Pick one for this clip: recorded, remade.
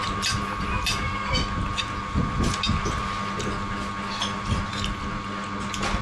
recorded